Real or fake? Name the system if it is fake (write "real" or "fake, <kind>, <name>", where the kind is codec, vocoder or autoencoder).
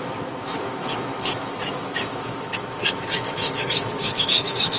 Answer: fake, autoencoder, DAC-VAE